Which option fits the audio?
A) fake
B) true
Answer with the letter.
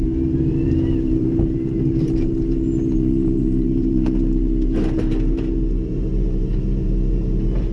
A